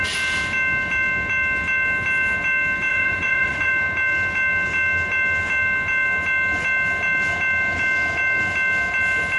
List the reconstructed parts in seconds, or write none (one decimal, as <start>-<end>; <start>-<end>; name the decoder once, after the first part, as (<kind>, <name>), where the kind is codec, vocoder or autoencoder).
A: 2.9-3.7 (vocoder, Vocos)